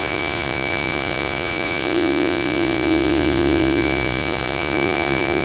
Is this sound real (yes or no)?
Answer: no